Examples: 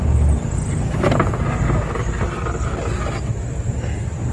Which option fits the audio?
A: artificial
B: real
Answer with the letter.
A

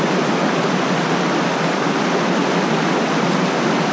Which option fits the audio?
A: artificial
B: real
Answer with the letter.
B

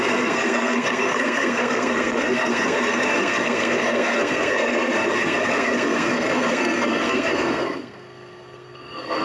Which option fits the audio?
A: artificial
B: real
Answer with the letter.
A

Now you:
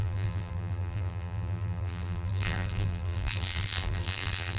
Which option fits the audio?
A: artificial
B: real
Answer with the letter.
A